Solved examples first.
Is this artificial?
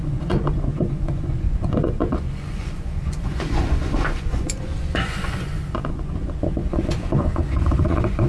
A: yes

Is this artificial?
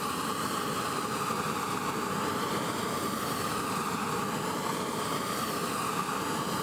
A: no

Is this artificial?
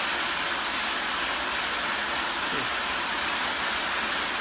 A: no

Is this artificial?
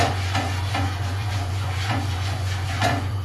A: yes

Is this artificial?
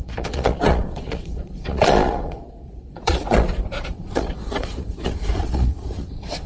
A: yes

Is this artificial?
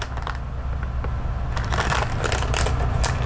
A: no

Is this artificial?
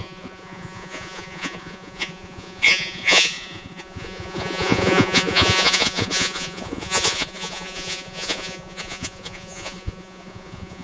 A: yes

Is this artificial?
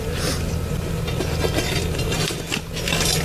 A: no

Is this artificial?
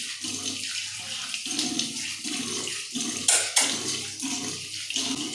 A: no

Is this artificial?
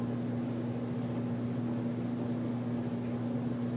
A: no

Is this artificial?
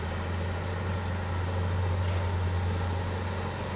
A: no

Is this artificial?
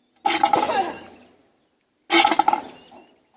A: no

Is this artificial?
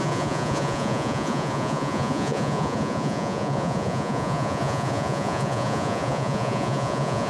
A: yes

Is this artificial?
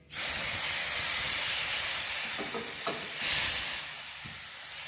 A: no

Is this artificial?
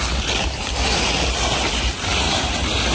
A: no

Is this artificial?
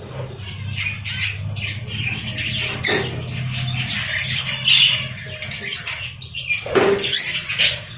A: no